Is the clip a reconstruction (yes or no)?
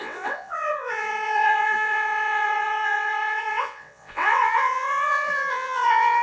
yes